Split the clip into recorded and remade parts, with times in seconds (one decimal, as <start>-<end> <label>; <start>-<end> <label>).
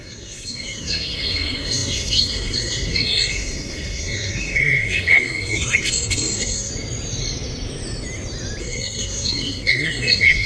0.0-6.7 remade; 6.7-8.6 recorded; 8.6-10.5 remade